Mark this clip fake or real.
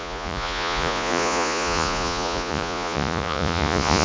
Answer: fake